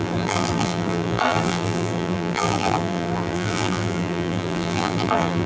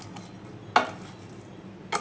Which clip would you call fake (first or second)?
first